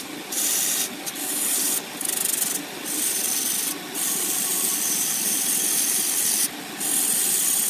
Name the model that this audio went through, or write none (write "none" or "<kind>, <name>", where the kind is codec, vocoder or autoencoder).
none